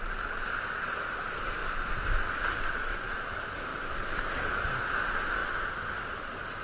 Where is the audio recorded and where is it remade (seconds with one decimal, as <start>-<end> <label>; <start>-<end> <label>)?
0.0-6.6 recorded